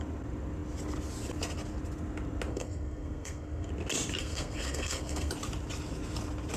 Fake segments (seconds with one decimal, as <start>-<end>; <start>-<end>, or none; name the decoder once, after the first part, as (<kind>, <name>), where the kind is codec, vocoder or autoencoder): 2.5-3.7 (codec, SNAC); 4.2-5.3